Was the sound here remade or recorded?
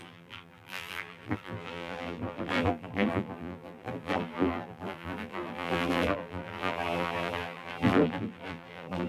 remade